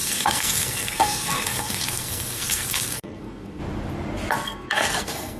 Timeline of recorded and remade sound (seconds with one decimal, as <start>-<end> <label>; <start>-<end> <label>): 0.0-3.6 remade; 3.6-4.3 recorded; 4.3-5.4 remade